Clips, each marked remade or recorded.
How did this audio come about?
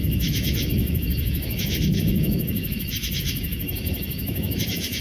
remade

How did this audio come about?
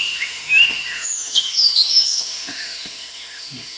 remade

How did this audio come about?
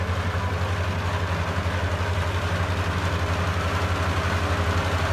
recorded